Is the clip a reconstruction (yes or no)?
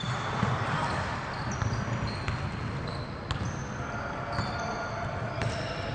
no